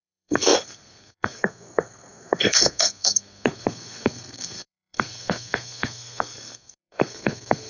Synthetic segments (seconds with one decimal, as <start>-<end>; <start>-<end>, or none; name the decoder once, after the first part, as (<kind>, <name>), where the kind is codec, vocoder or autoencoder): 0.0-7.7 (codec, SNAC)